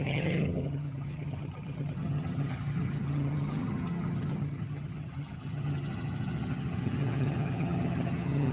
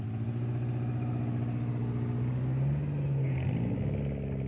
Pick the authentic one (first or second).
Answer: second